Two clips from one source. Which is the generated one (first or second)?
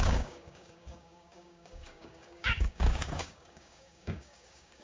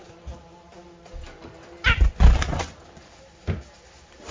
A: first